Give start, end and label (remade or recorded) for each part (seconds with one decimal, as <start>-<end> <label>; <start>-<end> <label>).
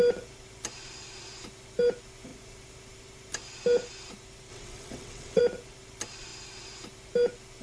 0.0-4.5 recorded; 4.5-5.4 remade; 5.4-7.6 recorded